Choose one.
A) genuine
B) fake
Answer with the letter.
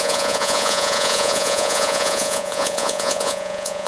B